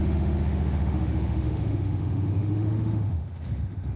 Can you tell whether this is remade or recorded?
remade